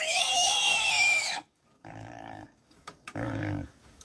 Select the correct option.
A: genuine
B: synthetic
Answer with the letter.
B